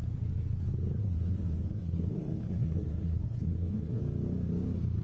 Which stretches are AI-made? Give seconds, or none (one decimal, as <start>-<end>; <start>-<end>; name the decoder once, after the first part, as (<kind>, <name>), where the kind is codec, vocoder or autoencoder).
1.0-4.0 (codec, SNAC)